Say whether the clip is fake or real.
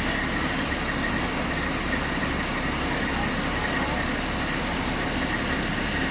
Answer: real